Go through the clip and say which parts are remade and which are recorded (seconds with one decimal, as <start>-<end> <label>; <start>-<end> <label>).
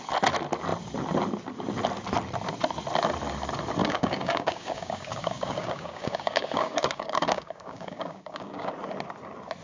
0.0-3.8 recorded; 3.8-8.7 remade; 8.7-9.6 recorded